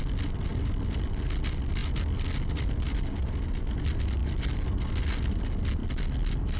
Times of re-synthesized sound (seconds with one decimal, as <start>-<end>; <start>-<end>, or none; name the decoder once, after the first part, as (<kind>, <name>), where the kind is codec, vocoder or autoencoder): none